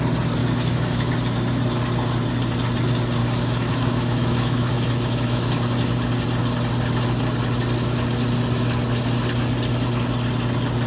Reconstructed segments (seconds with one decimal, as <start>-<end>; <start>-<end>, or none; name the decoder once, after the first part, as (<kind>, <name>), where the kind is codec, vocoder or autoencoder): 0.4-1.1 (autoencoder, DAC-VAE); 3.2-5.5